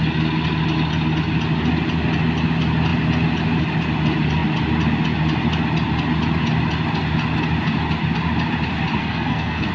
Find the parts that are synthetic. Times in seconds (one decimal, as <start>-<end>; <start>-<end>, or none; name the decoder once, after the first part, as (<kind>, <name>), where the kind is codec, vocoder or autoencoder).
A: 9.0-9.7 (codec, SNAC)